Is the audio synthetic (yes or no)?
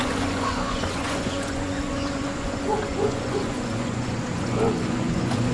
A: yes